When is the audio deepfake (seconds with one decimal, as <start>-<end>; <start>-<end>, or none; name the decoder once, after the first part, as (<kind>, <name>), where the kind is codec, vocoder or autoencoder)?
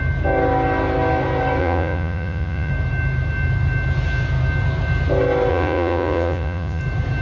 1.6-2.7 (vocoder, Vocos); 5.5-6.8